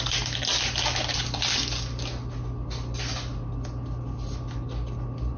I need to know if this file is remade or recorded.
recorded